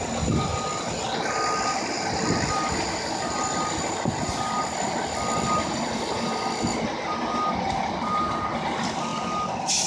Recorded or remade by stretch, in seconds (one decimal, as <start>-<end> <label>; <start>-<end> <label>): 0.0-9.9 recorded